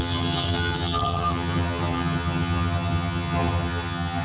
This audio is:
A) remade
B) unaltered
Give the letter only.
A